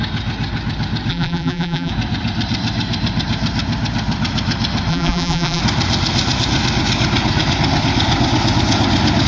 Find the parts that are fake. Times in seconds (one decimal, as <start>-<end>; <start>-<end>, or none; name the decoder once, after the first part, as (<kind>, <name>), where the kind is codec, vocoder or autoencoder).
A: 1.1-1.9 (vocoder, BigVGAN v2); 4.9-5.6

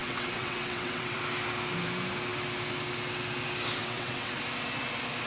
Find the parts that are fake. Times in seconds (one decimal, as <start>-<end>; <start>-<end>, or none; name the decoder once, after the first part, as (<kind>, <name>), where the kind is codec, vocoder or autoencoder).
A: 0.0-1.2 (vocoder, WaveNeXt); 3.8-4.4

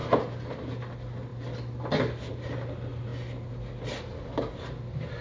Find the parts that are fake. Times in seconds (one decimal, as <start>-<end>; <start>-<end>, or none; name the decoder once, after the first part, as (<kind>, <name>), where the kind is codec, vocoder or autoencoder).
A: none

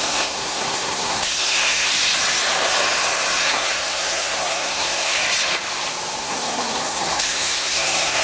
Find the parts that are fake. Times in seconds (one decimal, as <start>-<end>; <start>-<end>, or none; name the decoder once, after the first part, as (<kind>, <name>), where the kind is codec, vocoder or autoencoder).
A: 0.0-1.9 (codec, SNAC); 3.4-5.2; 6.2-8.2